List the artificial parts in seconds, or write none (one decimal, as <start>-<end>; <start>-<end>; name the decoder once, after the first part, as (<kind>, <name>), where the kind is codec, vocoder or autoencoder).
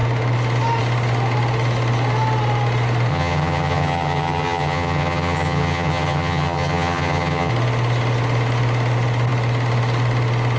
3.1-7.5 (vocoder, HiFi-GAN)